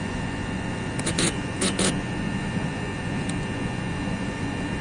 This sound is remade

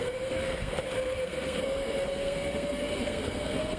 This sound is remade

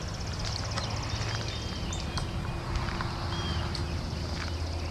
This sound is recorded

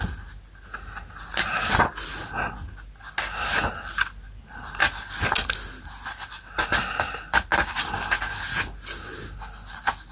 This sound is recorded